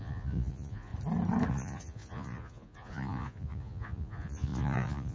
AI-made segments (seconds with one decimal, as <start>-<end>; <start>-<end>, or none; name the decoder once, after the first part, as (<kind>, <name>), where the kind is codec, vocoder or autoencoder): 0.0-0.9 (vocoder, Vocos); 1.5-5.1